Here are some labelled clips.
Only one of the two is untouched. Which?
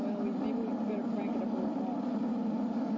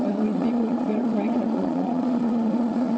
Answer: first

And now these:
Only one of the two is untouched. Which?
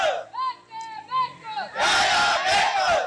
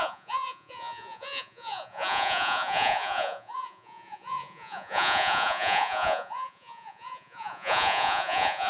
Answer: first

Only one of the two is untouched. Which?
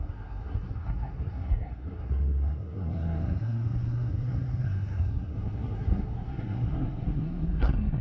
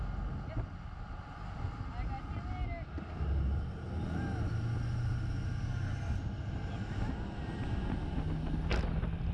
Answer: second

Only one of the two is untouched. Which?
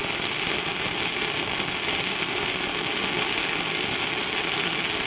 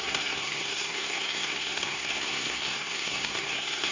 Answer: first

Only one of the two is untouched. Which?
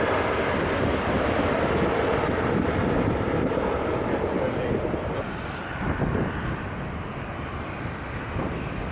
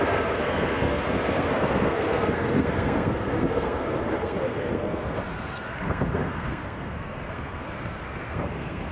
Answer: first